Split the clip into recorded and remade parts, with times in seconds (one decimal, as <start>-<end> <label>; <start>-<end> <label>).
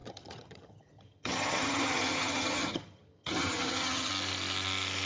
0.0-4.1 remade; 4.1-5.1 recorded